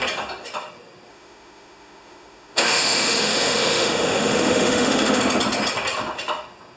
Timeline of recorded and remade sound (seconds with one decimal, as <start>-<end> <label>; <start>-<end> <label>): 0.0-1.1 recorded; 1.1-5.2 remade; 5.2-6.8 recorded